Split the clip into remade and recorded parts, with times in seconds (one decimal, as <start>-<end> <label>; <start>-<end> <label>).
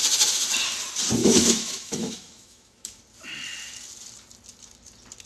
0.0-1.2 recorded; 1.2-3.0 remade; 3.0-5.3 recorded